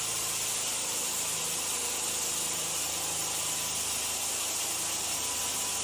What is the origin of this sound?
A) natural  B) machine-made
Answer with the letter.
A